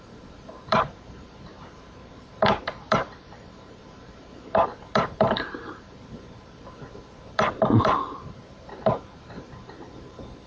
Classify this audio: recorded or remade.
remade